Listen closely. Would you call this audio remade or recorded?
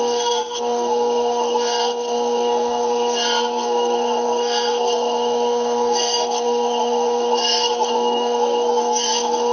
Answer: remade